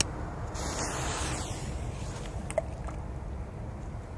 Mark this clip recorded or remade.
recorded